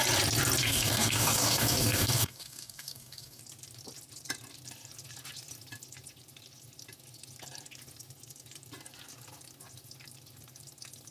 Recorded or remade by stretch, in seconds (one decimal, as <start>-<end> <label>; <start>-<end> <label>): 0.0-0.6 recorded; 0.6-3.4 remade; 3.4-11.1 recorded